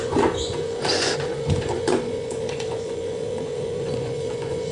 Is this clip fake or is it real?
fake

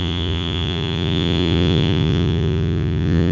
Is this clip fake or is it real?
fake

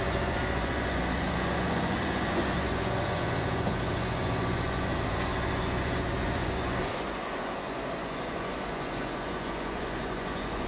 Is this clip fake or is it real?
fake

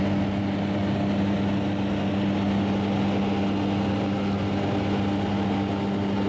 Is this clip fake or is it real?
real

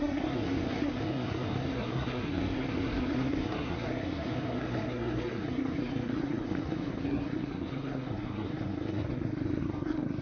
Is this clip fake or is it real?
fake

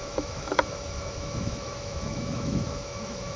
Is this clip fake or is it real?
fake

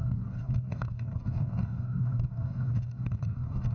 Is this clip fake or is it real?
fake